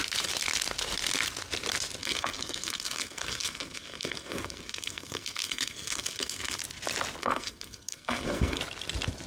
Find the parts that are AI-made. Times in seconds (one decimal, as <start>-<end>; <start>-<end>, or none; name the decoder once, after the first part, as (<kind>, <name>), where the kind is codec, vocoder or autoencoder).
2.0-6.6 (codec, SNAC); 7.2-8.6